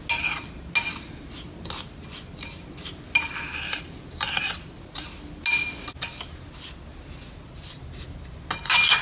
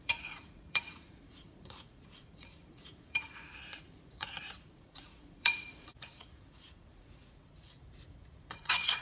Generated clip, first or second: second